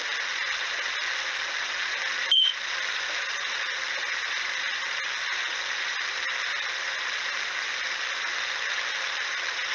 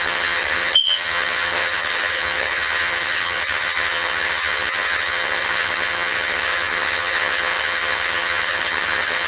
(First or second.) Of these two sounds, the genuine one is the first